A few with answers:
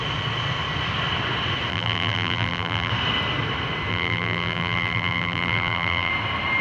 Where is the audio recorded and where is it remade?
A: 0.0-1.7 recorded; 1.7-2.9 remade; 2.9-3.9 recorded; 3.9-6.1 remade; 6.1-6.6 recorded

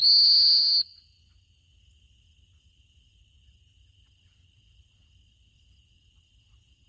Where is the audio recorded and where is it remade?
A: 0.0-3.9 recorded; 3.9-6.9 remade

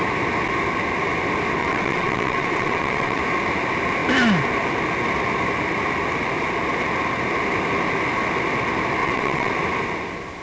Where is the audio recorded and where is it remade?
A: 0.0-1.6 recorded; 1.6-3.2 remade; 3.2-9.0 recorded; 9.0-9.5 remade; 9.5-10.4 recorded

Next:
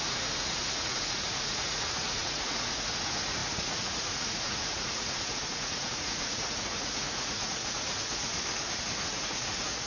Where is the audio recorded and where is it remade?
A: 0.0-8.3 remade; 8.3-8.8 recorded; 8.8-9.9 remade

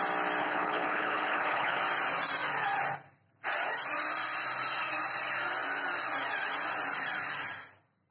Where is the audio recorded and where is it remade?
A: 0.0-0.4 recorded; 0.4-1.8 remade; 1.8-8.1 recorded

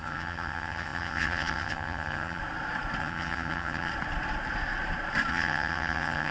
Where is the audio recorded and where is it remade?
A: 0.0-2.4 remade; 2.4-3.0 recorded; 3.0-3.9 remade; 3.9-5.3 recorded; 5.3-6.3 remade

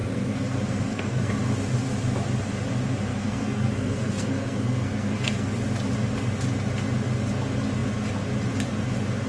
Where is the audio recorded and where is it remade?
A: 0.0-1.3 remade; 1.3-3.1 recorded; 3.1-5.5 remade; 5.5-9.3 recorded

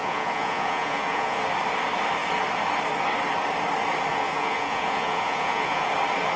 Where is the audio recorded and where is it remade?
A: 0.0-1.4 remade; 1.4-4.1 recorded; 4.1-5.9 remade; 5.9-6.4 recorded